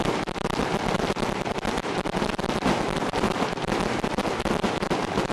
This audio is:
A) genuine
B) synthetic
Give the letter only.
A